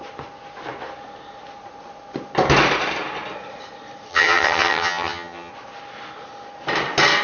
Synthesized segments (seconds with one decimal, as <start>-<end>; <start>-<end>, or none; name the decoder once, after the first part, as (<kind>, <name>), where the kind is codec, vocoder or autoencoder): 4.1-5.5 (vocoder, HiFi-GAN)